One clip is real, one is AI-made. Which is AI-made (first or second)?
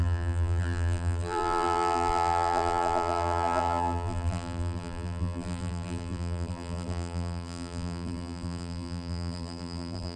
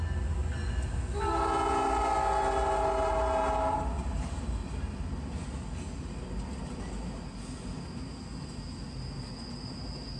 first